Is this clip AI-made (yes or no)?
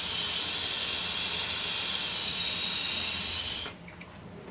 no